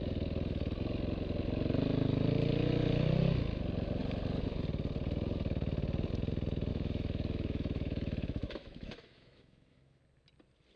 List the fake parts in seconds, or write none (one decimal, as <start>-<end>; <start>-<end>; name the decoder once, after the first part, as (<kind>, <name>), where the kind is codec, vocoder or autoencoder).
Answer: 6.7-10.0 (autoencoder, DAC-VAE)